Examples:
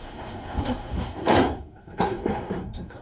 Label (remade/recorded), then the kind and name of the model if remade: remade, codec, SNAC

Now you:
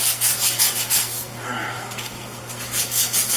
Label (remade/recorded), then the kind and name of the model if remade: remade, codec, SNAC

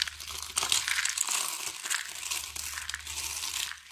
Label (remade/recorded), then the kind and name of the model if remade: recorded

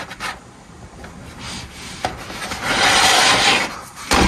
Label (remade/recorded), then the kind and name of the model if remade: recorded